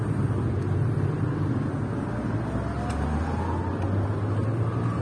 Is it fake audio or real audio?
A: real